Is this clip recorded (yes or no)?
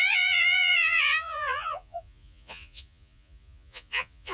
no